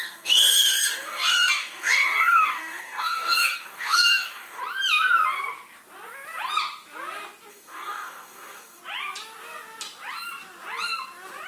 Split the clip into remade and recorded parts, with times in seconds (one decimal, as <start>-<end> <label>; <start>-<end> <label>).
0.0-4.6 remade; 4.6-7.5 recorded; 7.5-8.8 remade; 8.8-11.5 recorded